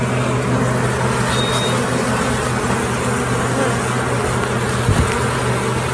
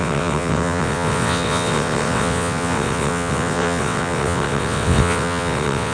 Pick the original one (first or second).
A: first